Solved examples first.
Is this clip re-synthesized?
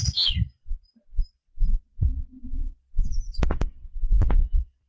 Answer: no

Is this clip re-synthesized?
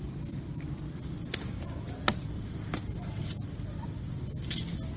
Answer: no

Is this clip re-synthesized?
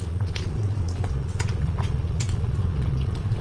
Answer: yes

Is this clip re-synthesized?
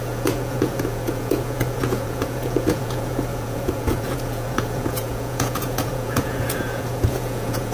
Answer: yes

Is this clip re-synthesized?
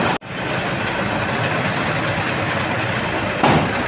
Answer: no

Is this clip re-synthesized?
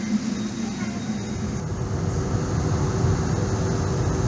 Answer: no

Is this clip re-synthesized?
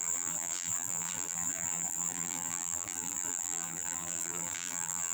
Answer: yes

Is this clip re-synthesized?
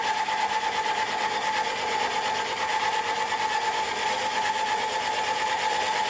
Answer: no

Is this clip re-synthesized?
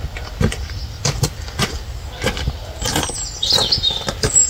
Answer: no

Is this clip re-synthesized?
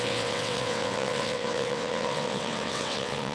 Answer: yes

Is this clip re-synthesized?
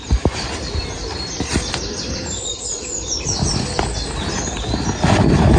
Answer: no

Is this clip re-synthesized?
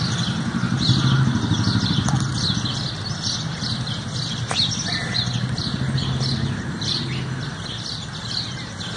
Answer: no